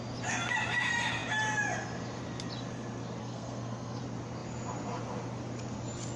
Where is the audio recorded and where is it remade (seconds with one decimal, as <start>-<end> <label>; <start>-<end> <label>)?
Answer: 0.0-3.2 recorded; 3.2-4.0 remade; 4.0-6.2 recorded